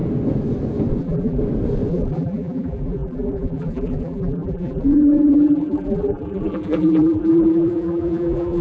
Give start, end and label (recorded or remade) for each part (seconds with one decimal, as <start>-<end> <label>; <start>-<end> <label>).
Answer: 0.0-1.0 recorded; 1.0-1.4 remade; 1.4-1.9 recorded; 1.9-8.6 remade